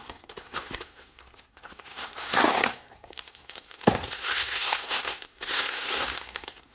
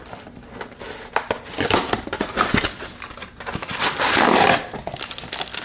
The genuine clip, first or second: second